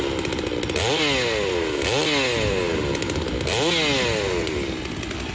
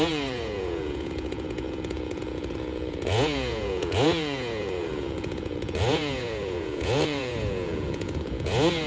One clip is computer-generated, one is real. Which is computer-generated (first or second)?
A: second